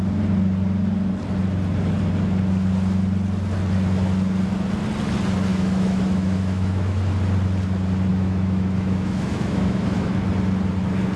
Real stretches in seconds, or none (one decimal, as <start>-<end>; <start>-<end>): 0.0-5.5; 7.0-8.1; 10.1-11.2